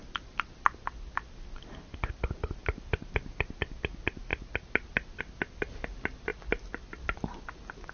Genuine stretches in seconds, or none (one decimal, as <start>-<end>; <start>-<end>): 0.0-7.9